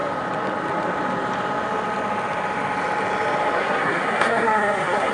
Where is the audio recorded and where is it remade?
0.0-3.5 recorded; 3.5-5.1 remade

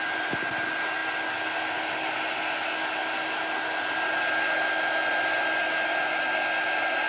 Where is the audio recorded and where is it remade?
0.0-7.1 recorded

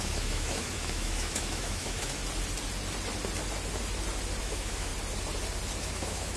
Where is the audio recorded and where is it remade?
0.0-2.2 remade; 2.2-4.4 recorded; 4.4-4.9 remade; 4.9-5.8 recorded; 5.8-6.4 remade

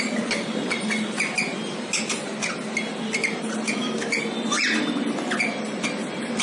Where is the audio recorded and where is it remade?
0.0-6.4 recorded